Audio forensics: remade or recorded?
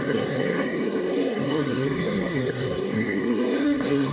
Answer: remade